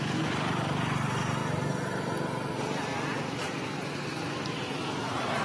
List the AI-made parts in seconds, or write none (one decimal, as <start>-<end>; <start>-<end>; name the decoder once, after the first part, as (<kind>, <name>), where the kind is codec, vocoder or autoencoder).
none